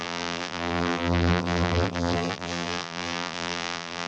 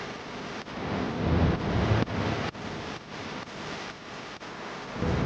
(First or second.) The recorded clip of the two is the second